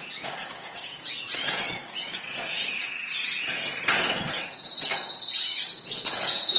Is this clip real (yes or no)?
no